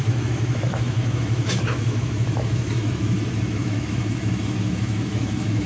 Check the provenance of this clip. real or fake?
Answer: fake